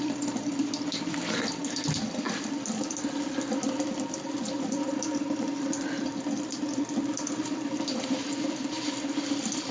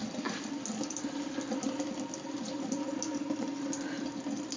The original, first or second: second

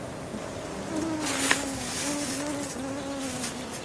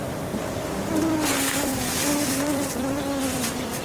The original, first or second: first